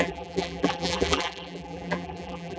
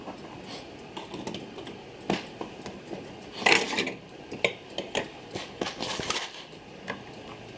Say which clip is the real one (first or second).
second